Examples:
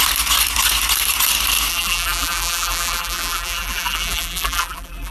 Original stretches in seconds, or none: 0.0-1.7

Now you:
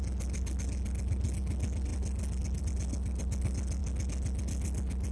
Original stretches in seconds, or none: 0.0-5.1

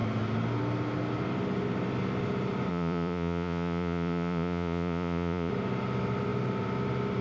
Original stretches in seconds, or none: 0.0-2.7; 5.5-7.2